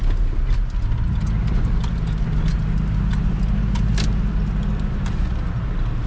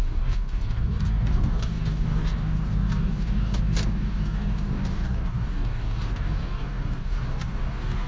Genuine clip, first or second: first